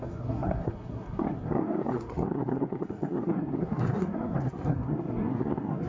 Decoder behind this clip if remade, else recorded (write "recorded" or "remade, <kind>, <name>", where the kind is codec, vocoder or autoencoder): remade, codec, SNAC